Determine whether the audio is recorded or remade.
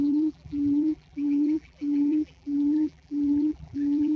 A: remade